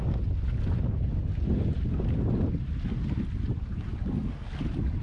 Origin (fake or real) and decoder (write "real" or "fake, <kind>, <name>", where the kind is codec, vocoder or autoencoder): real